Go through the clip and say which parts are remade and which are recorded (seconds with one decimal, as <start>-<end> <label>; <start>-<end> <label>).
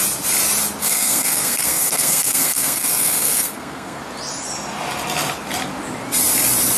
0.0-0.8 recorded; 0.8-4.0 remade; 4.0-6.8 recorded